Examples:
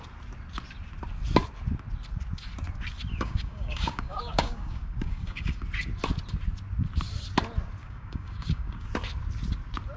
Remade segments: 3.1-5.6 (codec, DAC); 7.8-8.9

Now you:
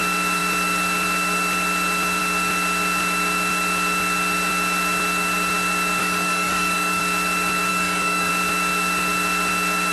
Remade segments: 6.0-7.0 (codec, DAC); 7.7-8.3